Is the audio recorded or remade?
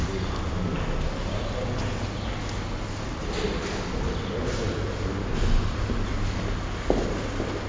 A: recorded